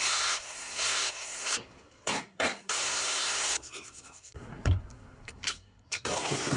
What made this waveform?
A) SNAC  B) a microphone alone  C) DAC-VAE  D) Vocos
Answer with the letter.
A